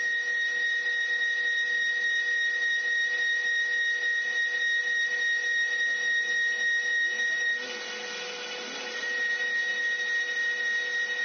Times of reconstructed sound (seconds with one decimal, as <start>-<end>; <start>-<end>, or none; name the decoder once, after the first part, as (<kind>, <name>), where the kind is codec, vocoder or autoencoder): none